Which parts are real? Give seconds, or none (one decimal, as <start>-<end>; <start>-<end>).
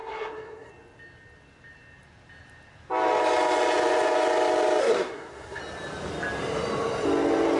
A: 0.7-4.8; 5.6-7.6